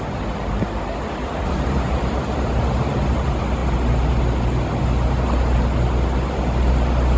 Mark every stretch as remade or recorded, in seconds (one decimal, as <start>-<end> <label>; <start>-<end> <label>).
0.0-7.2 recorded